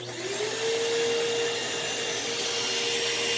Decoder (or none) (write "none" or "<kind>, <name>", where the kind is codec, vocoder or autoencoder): none